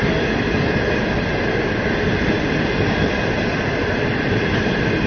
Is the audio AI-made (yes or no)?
no